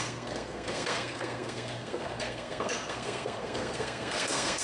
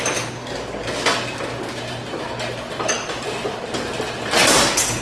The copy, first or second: first